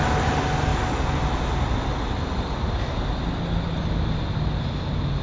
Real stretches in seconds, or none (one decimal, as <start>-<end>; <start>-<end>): 0.0-5.2